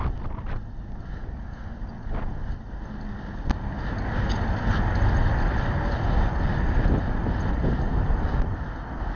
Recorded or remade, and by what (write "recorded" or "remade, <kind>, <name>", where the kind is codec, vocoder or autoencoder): recorded